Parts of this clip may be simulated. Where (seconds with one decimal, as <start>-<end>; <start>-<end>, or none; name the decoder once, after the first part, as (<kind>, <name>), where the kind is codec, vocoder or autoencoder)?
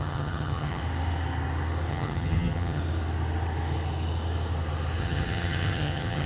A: 0.0-0.8 (vocoder, HiFi-GAN); 1.9-2.8; 5.0-6.3